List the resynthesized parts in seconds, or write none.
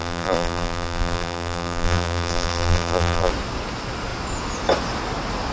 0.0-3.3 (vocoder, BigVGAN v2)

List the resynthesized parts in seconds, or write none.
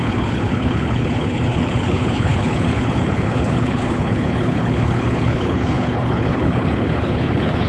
0.0-7.7 (codec, HILCodec)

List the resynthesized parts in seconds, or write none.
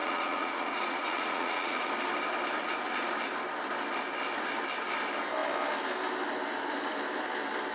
0.0-1.9 (vocoder, Vocos); 2.6-3.1